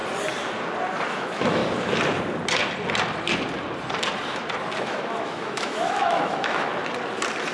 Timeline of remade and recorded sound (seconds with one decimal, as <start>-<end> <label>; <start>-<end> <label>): 0.0-1.1 recorded; 1.1-1.6 remade; 1.6-4.8 recorded; 4.8-6.7 remade; 6.7-7.5 recorded